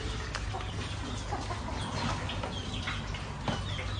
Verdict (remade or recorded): recorded